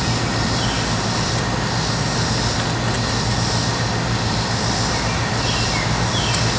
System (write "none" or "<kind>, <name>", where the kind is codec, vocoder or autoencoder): none